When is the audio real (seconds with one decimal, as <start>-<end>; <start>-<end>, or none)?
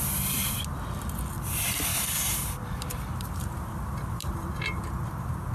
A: 0.0-1.9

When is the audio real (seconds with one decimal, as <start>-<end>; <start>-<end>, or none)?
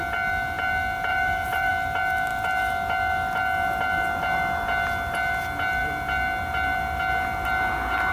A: 0.0-1.1; 1.7-8.1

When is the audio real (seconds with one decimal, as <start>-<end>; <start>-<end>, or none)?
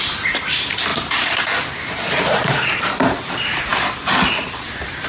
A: 0.0-0.9; 3.3-5.1